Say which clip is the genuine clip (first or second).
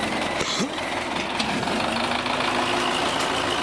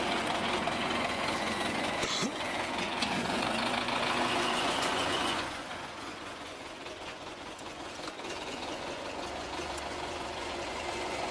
first